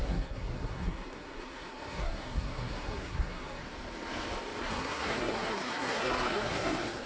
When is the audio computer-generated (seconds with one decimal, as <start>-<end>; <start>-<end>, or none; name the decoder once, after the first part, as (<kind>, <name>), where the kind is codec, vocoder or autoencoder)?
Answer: 0.0-3.6 (codec, SNAC); 4.6-7.1